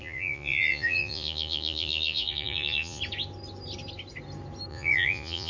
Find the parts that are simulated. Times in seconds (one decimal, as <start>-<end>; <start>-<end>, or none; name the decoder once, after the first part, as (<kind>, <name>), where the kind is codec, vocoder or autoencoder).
0.0-3.0 (vocoder, Vocos); 4.7-5.5